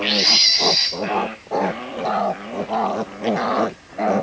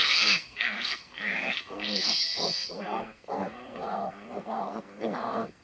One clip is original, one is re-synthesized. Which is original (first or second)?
first